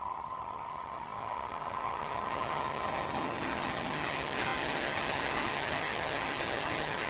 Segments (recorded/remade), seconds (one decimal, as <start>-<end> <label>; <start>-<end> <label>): 0.0-7.1 remade